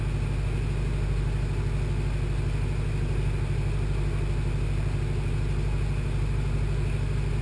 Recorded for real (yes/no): yes